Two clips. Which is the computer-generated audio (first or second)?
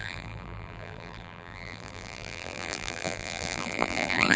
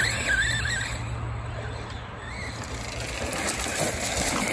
first